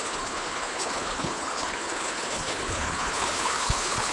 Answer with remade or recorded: remade